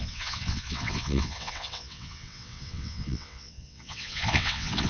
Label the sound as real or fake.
fake